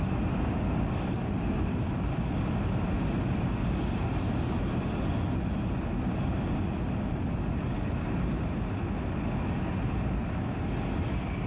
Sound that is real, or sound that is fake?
real